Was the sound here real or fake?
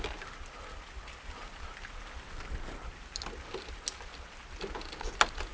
real